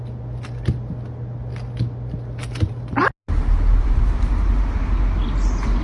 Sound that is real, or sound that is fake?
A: real